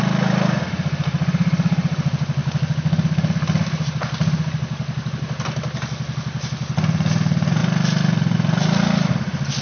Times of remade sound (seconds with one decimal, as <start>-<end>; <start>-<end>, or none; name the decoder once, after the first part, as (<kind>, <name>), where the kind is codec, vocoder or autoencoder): none